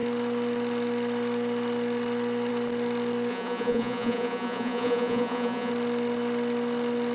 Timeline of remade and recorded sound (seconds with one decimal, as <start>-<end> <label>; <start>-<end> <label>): 0.0-3.3 recorded; 3.3-5.7 remade; 5.7-7.1 recorded